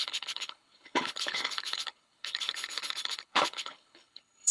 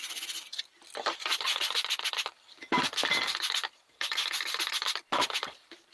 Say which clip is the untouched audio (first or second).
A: second